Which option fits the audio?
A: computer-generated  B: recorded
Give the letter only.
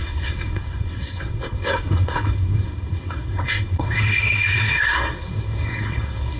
A